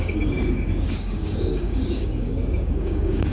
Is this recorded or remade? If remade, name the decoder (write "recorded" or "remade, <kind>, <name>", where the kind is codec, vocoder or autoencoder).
remade, codec, DAC